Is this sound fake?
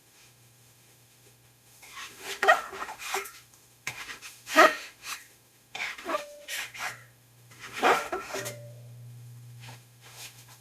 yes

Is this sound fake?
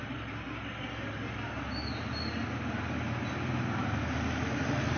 no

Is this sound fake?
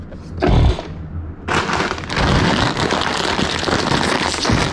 no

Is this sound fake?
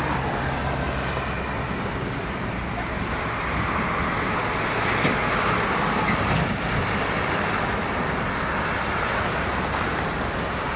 no